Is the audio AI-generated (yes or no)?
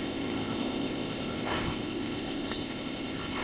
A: yes